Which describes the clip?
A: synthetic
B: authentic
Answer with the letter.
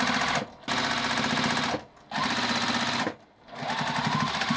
B